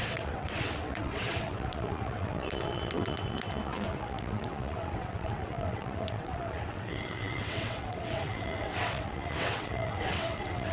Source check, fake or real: fake